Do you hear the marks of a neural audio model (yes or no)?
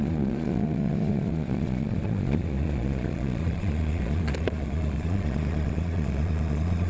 yes